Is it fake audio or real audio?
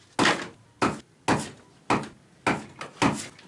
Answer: real